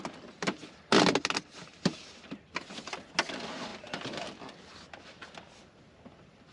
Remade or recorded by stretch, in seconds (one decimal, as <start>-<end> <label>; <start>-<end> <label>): 0.0-6.5 recorded